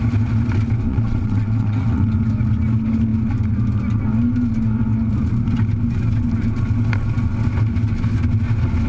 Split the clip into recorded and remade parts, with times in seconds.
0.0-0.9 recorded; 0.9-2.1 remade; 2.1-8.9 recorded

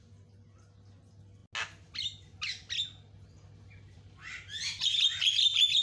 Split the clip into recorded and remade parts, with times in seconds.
0.0-5.8 recorded

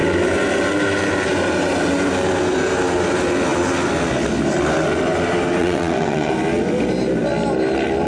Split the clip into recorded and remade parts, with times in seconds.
0.0-5.6 recorded; 5.6-6.3 remade; 6.3-8.1 recorded

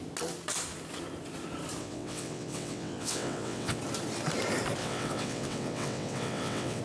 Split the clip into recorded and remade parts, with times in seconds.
0.0-1.8 recorded; 1.8-3.8 remade; 3.8-4.8 recorded; 4.8-6.8 remade